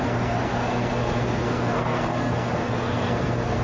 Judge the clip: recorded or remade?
remade